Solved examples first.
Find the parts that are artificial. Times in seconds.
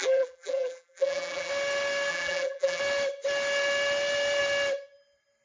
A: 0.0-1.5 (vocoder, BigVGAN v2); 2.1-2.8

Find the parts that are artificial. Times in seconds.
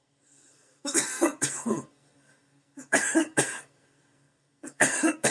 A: 0.0-5.3 (codec, SNAC)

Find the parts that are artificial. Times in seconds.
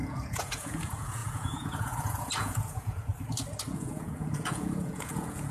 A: 0.0-3.1 (vocoder, Vocos); 3.7-5.5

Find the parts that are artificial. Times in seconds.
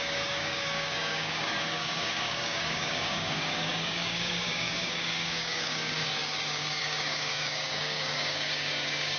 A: 0.0-9.2 (codec, DAC)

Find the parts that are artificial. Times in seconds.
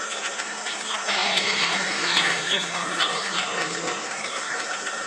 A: 0.0-5.1 (codec, SNAC)